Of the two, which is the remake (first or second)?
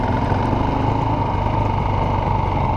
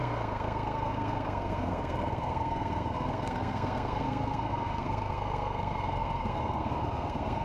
second